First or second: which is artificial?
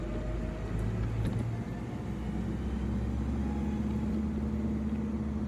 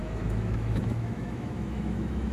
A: second